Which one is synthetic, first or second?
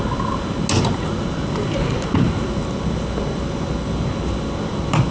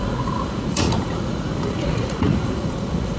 second